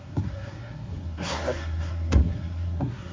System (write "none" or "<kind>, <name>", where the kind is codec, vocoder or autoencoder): codec, SNAC